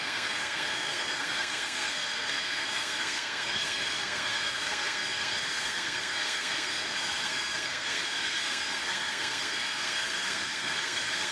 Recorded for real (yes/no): no